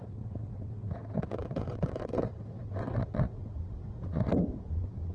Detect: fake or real fake